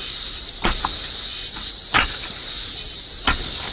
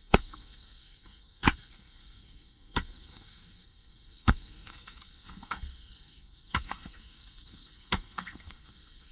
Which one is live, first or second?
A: first